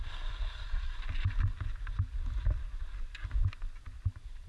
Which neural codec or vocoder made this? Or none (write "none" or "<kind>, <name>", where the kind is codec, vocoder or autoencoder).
none